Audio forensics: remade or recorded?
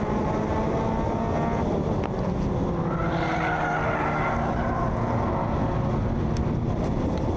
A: recorded